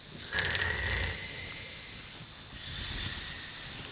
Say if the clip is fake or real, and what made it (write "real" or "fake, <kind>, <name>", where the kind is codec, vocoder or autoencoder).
real